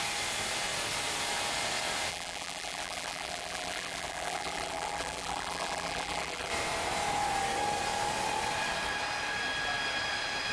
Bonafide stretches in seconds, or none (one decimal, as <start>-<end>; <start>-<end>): 0.0-2.1; 6.5-10.5